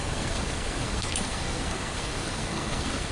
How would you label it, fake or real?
fake